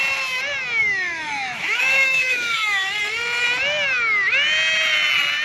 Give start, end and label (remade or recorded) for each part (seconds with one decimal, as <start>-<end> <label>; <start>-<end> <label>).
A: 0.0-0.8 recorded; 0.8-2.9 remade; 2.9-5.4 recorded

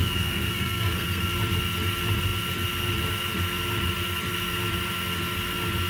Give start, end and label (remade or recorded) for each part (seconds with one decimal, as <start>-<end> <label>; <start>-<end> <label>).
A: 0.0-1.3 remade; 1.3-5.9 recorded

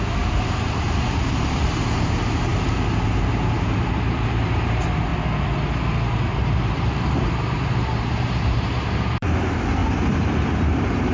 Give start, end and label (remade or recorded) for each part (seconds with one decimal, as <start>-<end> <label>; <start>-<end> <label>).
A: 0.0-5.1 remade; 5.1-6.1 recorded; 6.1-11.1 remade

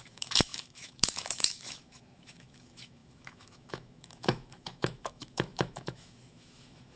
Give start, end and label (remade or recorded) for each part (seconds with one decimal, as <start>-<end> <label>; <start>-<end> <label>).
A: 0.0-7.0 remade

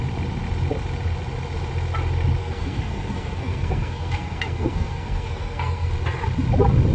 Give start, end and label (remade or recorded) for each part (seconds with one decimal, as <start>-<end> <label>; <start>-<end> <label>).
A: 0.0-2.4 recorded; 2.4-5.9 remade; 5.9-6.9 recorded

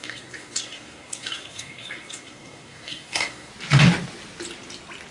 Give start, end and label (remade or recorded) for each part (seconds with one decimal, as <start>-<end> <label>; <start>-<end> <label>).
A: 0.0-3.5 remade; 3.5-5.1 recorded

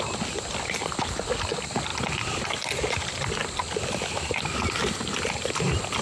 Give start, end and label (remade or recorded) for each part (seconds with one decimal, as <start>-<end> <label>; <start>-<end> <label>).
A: 0.0-6.0 recorded